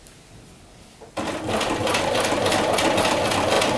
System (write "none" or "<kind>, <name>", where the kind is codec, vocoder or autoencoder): none